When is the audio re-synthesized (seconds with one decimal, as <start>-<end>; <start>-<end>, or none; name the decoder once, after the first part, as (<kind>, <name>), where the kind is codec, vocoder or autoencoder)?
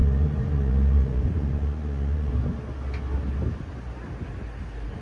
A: 0.0-2.3 (vocoder, Vocos)